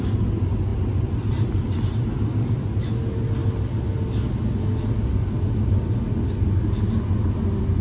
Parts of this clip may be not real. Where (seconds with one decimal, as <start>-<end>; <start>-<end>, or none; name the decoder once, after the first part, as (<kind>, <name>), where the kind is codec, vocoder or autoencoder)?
none